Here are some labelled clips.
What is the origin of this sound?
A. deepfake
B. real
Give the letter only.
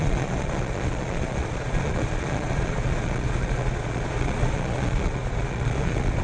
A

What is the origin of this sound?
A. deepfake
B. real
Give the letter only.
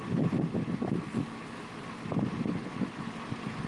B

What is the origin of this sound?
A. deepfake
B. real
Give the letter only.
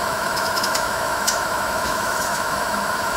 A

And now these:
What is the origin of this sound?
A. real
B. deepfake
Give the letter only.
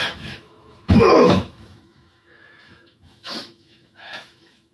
B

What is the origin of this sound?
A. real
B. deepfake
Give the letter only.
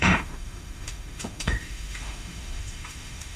B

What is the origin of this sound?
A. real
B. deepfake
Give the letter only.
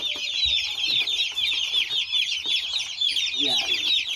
A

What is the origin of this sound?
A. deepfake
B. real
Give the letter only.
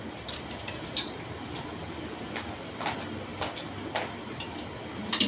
B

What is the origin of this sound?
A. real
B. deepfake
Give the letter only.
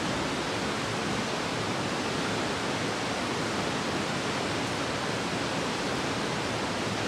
A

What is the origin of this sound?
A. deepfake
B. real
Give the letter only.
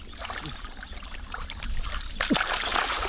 B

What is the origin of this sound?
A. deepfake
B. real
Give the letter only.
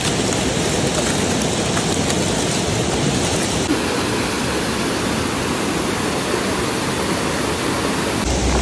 B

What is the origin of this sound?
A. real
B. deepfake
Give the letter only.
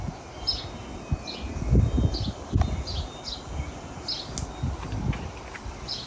A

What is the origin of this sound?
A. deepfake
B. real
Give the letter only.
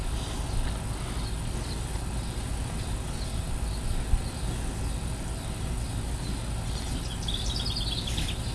B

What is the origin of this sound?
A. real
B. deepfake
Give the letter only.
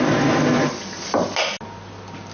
A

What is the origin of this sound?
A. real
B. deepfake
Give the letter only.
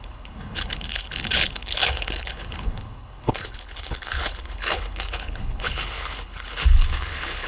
B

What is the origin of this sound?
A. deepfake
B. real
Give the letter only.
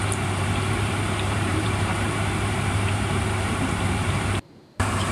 A